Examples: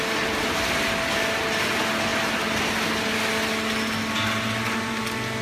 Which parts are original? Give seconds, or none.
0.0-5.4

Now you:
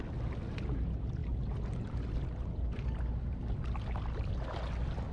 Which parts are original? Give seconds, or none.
0.0-5.1

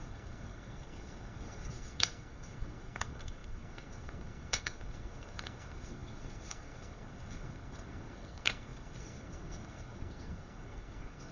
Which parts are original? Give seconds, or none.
none

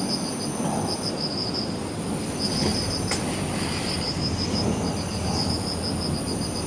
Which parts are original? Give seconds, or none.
0.0-6.7

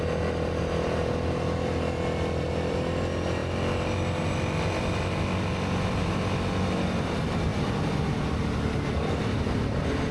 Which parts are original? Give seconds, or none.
0.0-10.1